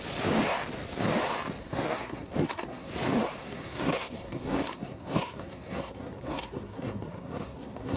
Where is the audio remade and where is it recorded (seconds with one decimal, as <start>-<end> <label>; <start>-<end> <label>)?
0.0-1.6 recorded; 1.6-2.9 remade; 2.9-3.4 recorded; 3.4-8.0 remade